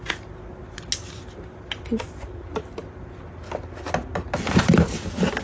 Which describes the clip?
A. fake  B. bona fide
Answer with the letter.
B